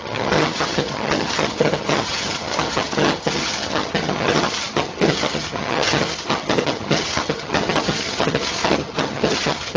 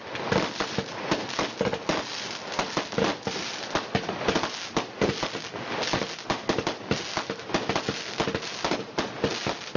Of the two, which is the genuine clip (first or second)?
second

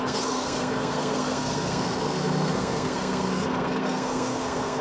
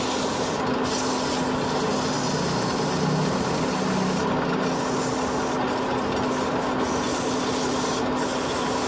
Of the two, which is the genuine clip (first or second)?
second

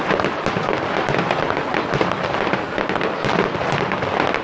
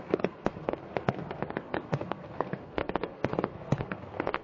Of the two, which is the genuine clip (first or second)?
first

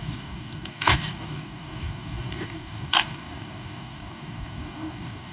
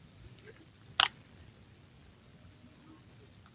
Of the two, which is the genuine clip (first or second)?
second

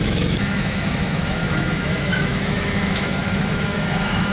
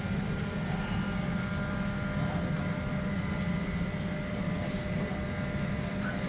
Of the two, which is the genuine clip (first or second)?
second